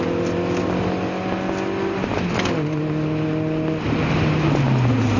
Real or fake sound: real